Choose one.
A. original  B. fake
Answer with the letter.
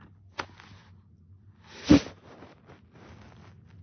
A